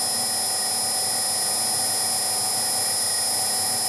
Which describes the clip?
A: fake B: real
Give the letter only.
B